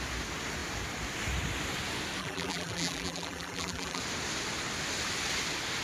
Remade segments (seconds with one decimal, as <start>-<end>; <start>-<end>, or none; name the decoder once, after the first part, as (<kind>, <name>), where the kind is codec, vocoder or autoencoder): 2.2-4.0 (vocoder, BigVGAN v2)